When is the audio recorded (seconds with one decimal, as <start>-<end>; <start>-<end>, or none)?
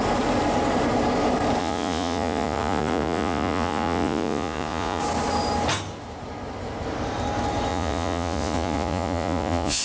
0.0-1.6; 5.0-7.7